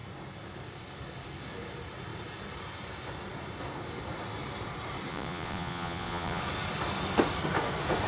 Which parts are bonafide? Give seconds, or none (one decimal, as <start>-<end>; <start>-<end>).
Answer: 0.0-5.1; 6.4-8.1